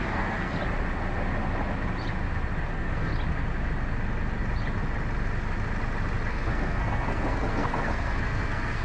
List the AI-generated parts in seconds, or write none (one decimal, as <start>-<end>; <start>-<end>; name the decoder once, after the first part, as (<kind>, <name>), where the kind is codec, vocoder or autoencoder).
0.0-0.6 (codec, SNAC); 2.7-3.1; 6.3-8.8